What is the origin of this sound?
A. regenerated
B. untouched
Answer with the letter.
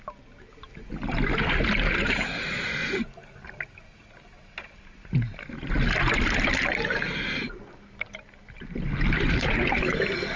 B